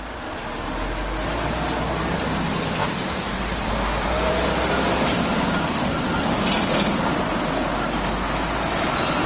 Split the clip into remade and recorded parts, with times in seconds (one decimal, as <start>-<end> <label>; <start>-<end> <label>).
0.0-2.8 recorded; 2.8-4.3 remade; 4.3-4.9 recorded; 4.9-5.7 remade; 5.7-9.3 recorded